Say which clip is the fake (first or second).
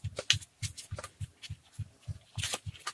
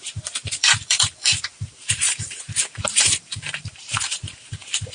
second